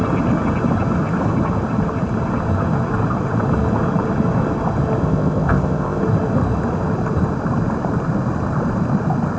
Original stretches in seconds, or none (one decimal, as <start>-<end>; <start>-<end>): 0.0-5.0; 6.0-9.4